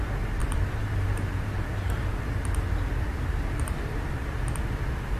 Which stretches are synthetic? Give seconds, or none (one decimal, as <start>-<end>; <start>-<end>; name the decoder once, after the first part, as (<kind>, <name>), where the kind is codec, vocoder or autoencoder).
0.4-2.4 (vocoder, BigVGAN v2); 3.1-4.2